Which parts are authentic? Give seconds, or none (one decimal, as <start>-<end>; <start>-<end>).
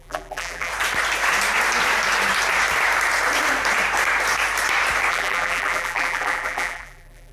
0.7-5.1